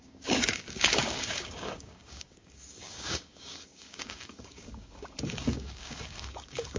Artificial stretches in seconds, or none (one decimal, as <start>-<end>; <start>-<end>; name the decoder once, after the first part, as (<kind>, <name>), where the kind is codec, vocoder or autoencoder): 0.0-6.8 (codec, DAC)

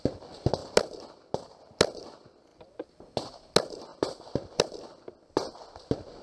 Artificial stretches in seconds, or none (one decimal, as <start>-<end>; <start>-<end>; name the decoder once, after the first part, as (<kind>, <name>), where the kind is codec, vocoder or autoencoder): 3.9-4.6 (vocoder, BigVGAN v2)